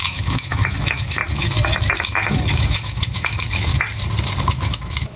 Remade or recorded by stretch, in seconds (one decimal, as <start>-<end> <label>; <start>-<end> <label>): 0.0-1.2 remade; 1.2-2.0 recorded; 2.0-3.7 remade; 3.7-4.4 recorded; 4.4-5.2 remade

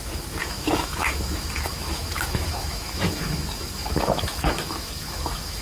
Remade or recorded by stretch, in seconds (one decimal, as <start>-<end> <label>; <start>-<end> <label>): 0.0-5.6 remade

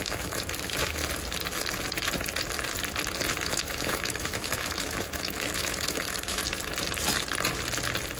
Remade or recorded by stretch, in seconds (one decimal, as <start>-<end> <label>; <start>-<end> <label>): 0.0-1.0 remade; 1.0-3.5 recorded; 3.5-6.4 remade; 6.4-8.2 recorded

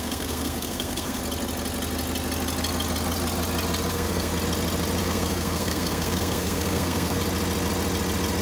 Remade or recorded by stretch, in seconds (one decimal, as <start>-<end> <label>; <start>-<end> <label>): 0.0-1.2 remade; 1.2-3.9 recorded; 3.9-4.3 remade; 4.3-5.0 recorded; 5.0-7.2 remade; 7.2-8.4 recorded